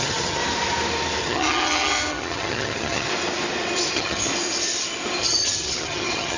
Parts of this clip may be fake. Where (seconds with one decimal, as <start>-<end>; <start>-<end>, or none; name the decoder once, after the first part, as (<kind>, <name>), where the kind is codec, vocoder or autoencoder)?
0.0-0.4 (vocoder, HiFi-GAN); 1.2-3.1; 3.9-4.3; 5.2-6.4